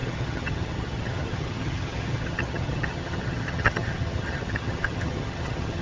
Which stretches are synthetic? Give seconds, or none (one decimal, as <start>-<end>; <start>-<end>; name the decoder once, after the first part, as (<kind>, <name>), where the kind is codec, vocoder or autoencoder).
0.0-5.8 (vocoder, HiFi-GAN)